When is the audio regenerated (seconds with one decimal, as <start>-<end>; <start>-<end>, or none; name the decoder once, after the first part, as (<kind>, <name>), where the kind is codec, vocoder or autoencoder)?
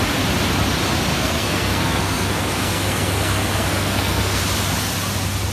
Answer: 1.1-4.4 (codec, SNAC)